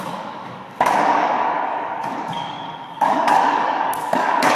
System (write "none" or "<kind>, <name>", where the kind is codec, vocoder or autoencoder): codec, DAC